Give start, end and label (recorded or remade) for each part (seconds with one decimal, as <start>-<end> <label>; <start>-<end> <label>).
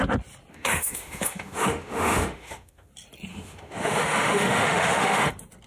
0.0-0.5 recorded; 0.5-2.9 remade; 2.9-3.3 recorded; 3.3-5.3 remade; 5.3-5.7 recorded